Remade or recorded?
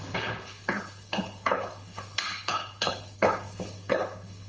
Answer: remade